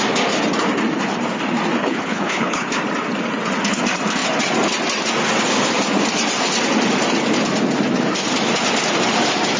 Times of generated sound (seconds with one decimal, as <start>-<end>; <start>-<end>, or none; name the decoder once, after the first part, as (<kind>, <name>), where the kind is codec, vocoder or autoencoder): 1.8-2.7 (codec, HILCodec)

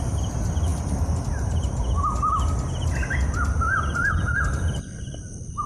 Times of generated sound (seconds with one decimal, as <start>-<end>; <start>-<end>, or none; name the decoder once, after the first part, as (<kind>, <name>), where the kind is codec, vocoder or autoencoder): none

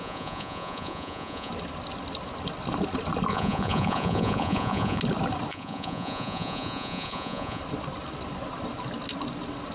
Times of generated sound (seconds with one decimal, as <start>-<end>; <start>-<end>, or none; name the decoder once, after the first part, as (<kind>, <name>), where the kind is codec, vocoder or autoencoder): 0.0-1.5 (vocoder, Vocos); 3.3-5.0; 5.5-7.6

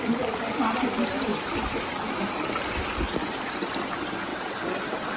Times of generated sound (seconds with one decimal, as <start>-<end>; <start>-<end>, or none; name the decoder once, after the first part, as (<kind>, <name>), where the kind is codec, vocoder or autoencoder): 4.3-5.2 (vocoder, WaveNeXt)

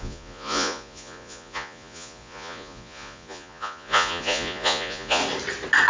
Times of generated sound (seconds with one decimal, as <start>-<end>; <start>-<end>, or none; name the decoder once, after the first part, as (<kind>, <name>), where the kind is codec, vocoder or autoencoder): 0.0-5.2 (vocoder, Vocos)

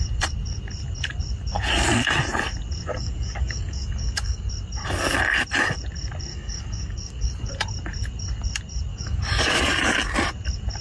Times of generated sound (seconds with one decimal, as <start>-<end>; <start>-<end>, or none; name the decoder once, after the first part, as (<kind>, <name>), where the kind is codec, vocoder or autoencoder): 2.9-4.5 (codec, DAC); 6.3-7.5; 8.9-9.6